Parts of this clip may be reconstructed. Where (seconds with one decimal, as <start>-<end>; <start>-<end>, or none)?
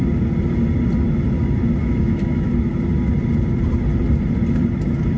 1.8-2.5